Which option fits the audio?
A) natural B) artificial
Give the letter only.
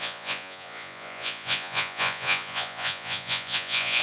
B